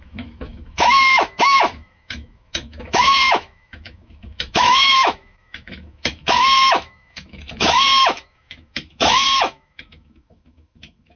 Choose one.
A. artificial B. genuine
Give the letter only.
A